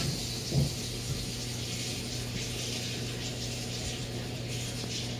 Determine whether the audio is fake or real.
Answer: real